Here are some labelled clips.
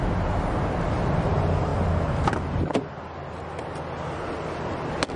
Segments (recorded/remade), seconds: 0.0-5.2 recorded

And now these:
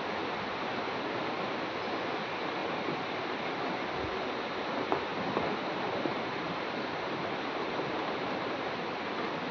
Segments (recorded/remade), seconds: 0.0-2.6 recorded; 2.6-3.5 remade; 3.5-5.1 recorded; 5.1-8.9 remade; 8.9-9.5 recorded

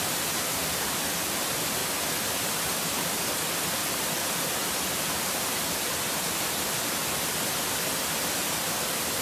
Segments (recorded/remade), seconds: 0.0-1.8 remade; 1.8-3.3 recorded; 3.3-9.2 remade